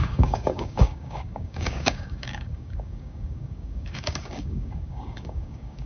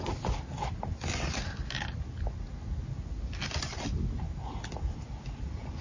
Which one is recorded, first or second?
second